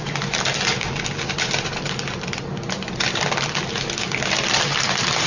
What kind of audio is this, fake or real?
real